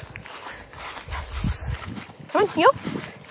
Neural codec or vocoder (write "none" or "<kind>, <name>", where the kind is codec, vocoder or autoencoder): vocoder, BigVGAN v2